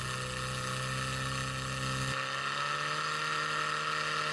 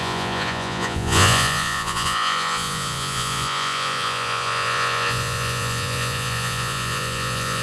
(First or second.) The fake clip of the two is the second